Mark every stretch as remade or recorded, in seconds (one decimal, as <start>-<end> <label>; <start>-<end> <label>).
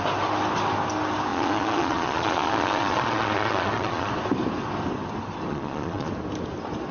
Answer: 0.0-1.3 recorded; 1.3-4.1 remade; 4.1-5.5 recorded; 5.5-6.1 remade; 6.1-6.9 recorded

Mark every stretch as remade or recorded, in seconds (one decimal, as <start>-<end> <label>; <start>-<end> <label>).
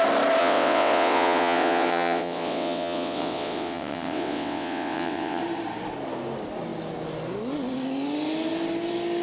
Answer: 0.0-0.4 recorded; 0.4-5.4 remade; 5.4-9.2 recorded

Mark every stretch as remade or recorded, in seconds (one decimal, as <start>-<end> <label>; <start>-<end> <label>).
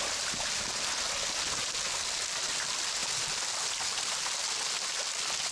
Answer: 0.0-5.5 recorded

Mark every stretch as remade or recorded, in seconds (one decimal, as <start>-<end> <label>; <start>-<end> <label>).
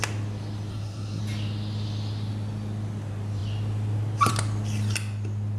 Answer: 0.0-0.7 recorded; 0.7-1.2 remade; 1.2-5.6 recorded